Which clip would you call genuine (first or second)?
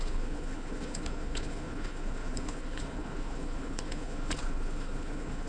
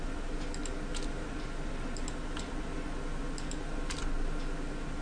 second